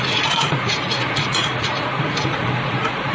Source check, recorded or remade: remade